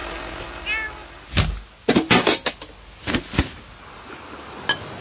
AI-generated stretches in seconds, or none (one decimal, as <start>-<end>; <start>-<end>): none

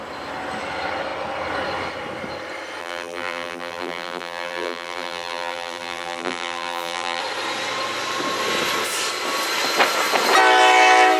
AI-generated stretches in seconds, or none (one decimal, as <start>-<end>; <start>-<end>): 2.8-7.2

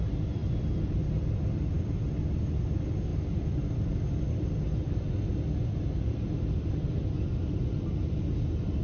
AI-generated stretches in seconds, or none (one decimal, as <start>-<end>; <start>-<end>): none

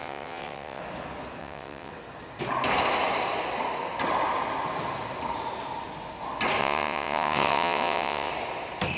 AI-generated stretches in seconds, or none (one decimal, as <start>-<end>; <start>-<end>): 0.0-0.8; 1.4-1.9; 6.6-8.3

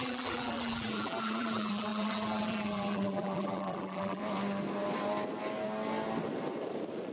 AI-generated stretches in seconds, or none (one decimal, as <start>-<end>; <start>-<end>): 0.0-4.2

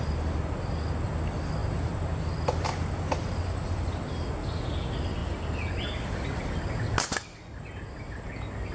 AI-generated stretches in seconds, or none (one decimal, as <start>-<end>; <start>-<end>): none